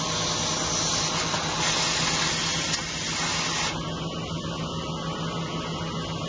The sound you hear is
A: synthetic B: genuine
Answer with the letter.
B